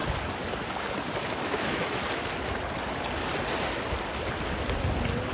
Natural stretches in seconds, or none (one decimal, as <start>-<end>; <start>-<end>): 0.0-1.2; 2.0-5.3